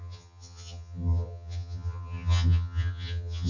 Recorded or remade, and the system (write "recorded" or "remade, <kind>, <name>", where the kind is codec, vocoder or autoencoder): remade, vocoder, HiFi-GAN